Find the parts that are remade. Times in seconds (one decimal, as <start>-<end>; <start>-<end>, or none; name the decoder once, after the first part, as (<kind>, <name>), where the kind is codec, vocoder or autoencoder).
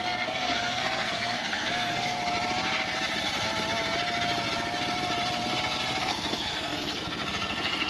0.0-2.2 (codec, SNAC); 6.0-7.9